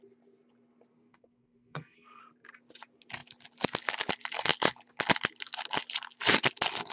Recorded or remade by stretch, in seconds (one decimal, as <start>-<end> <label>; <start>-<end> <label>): 0.0-1.1 recorded; 1.1-2.2 remade; 2.2-6.9 recorded